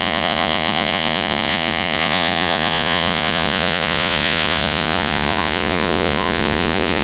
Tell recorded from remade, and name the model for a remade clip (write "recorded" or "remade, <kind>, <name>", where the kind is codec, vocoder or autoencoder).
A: remade, vocoder, Vocos